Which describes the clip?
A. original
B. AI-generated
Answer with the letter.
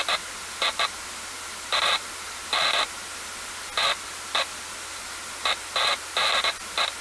A